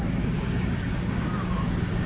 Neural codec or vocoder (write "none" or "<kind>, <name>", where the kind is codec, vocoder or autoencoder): codec, DAC